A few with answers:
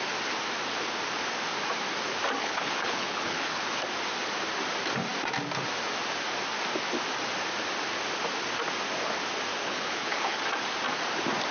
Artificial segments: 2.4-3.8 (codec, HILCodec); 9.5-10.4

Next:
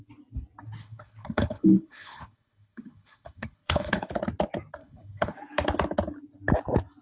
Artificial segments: 0.8-4.1 (codec, HILCodec); 4.8-5.4

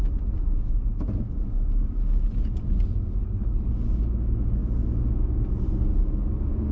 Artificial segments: 3.2-3.7 (codec, HILCodec)

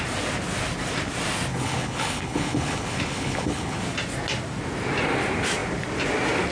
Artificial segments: 1.5-3.8 (codec, HILCodec)